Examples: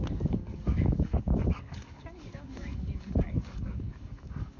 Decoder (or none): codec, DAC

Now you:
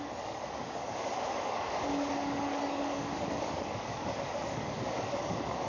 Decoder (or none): codec, DAC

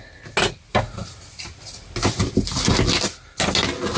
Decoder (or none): none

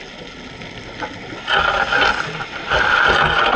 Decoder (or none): none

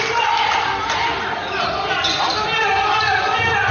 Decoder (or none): none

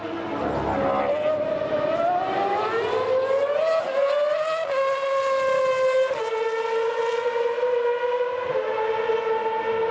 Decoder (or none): none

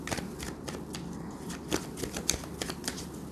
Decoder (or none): none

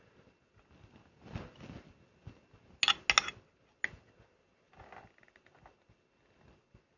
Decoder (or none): none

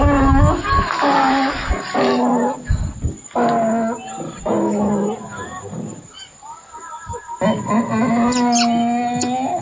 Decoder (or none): none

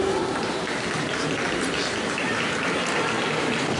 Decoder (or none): none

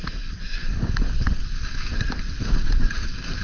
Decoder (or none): none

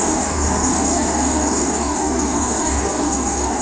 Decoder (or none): codec, DAC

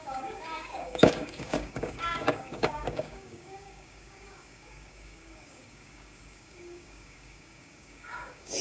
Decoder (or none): codec, DAC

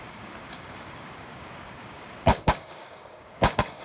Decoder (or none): codec, DAC